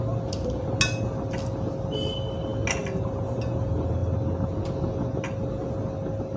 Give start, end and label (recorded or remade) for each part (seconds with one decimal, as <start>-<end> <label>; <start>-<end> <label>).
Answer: 0.0-6.4 recorded